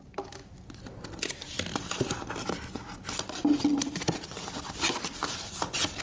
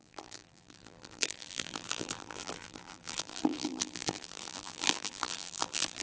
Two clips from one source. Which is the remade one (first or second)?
second